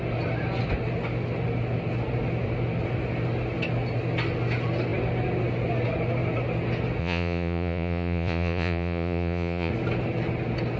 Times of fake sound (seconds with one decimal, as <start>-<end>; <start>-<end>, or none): 7.0-9.7